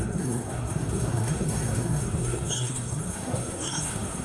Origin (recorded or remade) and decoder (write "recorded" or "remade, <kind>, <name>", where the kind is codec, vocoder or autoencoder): remade, codec, SNAC